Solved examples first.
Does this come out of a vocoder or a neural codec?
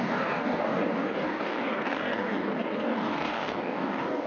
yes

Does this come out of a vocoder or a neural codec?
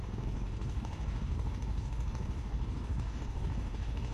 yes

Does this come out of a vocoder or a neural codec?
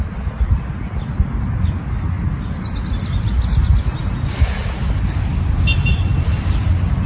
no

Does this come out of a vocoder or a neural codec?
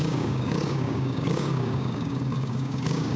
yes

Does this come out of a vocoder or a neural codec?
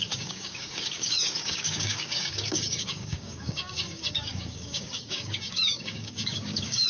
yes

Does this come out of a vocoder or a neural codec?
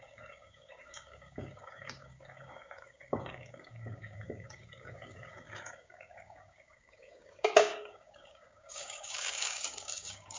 yes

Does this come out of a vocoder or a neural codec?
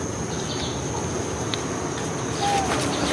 no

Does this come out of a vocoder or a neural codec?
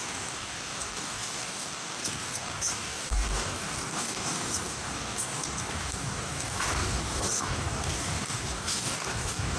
yes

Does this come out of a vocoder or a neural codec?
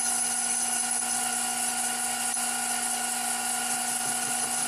no